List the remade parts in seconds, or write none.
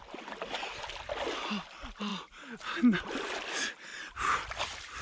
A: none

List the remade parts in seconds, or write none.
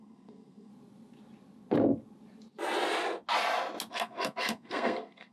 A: 0.0-0.7 (codec, SNAC); 3.9-5.3